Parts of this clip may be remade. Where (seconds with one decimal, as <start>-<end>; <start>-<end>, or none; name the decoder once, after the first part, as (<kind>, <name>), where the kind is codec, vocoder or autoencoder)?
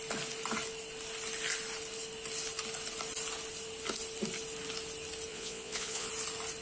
5.3-6.1 (vocoder, Vocos)